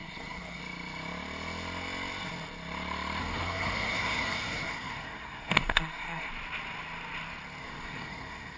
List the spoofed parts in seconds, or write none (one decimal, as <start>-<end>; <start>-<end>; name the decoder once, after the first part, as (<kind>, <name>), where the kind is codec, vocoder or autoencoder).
0.0-0.6 (codec, SNAC); 3.2-6.3; 7.6-8.6